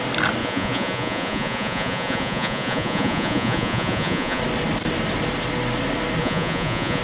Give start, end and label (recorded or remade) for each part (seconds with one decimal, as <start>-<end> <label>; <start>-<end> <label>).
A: 0.0-0.4 recorded; 0.4-4.4 remade; 4.4-6.2 recorded; 6.2-7.0 remade